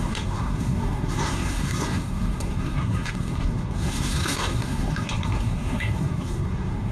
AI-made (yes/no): yes